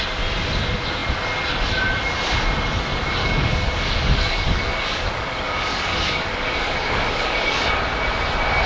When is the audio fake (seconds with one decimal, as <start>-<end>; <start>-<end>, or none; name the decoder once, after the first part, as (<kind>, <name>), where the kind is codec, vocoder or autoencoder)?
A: 3.2-7.7 (codec, DAC)